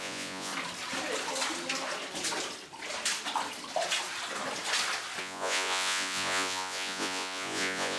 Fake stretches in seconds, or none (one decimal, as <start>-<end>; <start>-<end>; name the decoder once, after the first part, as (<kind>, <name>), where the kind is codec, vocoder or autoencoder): 0.0-0.5 (vocoder, Vocos); 5.2-8.0